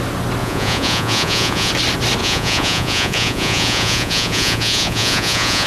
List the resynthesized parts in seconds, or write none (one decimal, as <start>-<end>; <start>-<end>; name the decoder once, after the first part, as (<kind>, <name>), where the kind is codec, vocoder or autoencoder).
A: 0.4-1.7 (vocoder, Vocos); 2.2-5.7